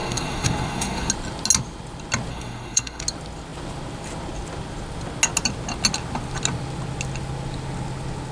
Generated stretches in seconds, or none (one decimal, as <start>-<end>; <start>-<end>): 0.0-1.1; 2.3-3.0